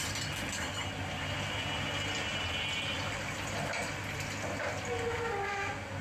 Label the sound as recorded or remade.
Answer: recorded